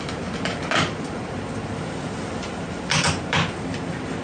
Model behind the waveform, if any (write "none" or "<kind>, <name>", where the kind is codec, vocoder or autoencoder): vocoder, BigVGAN v2